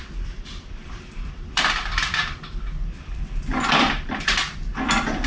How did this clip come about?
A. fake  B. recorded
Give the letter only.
A